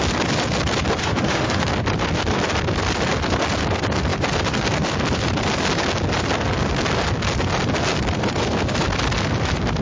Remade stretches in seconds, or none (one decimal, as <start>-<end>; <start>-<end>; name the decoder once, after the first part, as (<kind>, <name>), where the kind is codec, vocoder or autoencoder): 1.0-1.7 (autoencoder, DAC-VAE)